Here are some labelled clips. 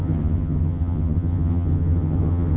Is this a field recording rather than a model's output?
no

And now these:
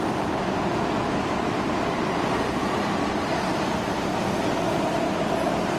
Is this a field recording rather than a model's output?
yes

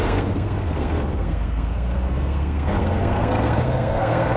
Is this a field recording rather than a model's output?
no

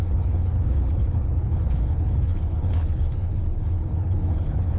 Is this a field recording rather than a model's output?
no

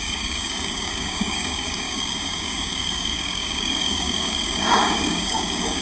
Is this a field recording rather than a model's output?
no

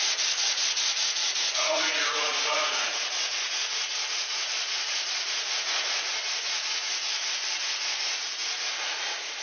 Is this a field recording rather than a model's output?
no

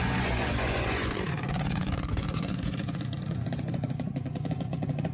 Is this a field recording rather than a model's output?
no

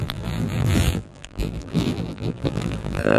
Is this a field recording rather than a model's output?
no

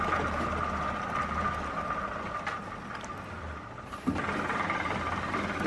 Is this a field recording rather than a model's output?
yes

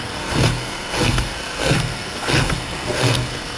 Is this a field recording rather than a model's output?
no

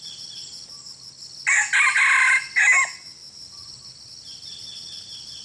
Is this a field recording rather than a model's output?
yes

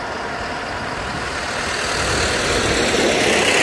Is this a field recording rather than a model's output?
yes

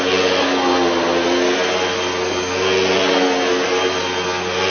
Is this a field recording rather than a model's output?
yes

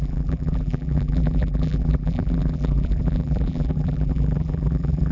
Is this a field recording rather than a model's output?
no